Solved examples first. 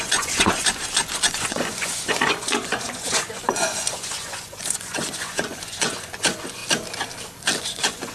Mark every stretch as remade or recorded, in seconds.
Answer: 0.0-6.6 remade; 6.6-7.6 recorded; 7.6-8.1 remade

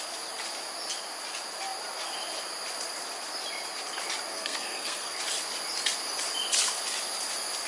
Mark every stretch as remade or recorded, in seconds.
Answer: 0.0-4.3 recorded; 4.3-5.2 remade; 5.2-7.7 recorded

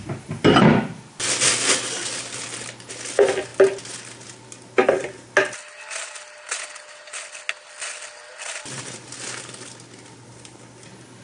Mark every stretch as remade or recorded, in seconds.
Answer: 0.0-11.2 recorded

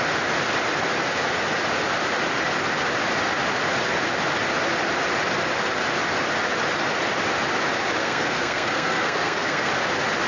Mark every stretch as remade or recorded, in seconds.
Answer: 0.0-8.0 recorded; 8.0-9.7 remade; 9.7-10.3 recorded

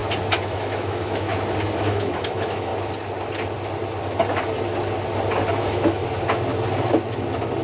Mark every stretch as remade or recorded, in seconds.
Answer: 0.0-0.5 recorded; 0.5-1.3 remade; 1.3-1.8 recorded; 1.8-2.7 remade; 2.7-5.6 recorded; 5.6-6.0 remade; 6.0-7.6 recorded